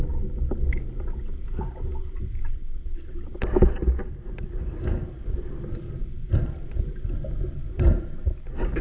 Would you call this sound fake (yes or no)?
no